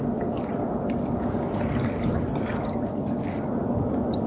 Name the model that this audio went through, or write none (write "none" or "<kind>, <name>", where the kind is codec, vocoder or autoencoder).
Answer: none